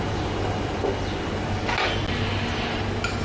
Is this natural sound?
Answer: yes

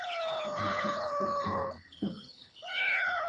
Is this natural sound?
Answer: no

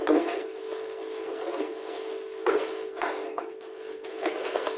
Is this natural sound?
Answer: no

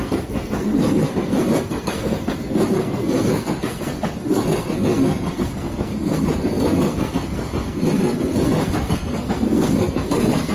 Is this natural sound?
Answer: no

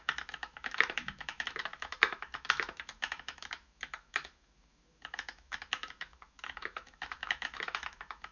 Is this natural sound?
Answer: no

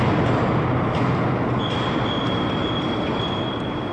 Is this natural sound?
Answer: yes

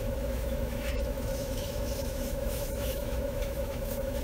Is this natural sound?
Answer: no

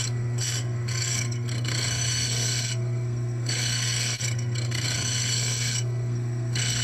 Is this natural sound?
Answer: no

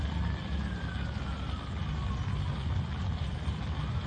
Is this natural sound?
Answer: yes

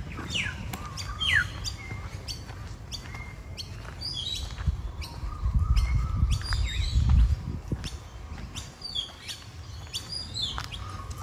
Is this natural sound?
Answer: yes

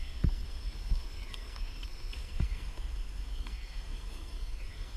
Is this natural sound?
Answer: no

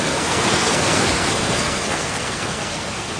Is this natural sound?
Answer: no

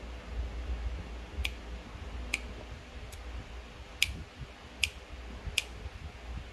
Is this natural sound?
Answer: yes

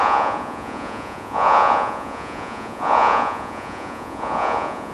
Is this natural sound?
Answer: no